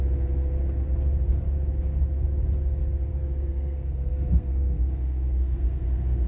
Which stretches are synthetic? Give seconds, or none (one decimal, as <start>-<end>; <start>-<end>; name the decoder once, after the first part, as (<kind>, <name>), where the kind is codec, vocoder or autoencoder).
3.1-6.3 (codec, SNAC)